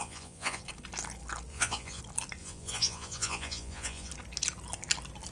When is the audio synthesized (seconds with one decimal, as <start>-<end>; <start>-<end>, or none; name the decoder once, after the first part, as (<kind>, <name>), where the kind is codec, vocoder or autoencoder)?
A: 0.0-0.6 (vocoder, Vocos); 1.5-2.0; 2.4-4.1